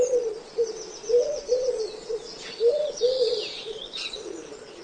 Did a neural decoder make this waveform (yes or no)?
yes